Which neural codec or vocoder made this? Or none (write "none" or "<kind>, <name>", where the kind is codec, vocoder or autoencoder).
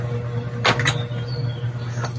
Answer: none